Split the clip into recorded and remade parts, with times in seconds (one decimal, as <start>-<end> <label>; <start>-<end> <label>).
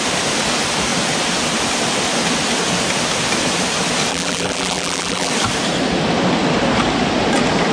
0.0-4.1 recorded; 4.1-5.3 remade; 5.3-7.7 recorded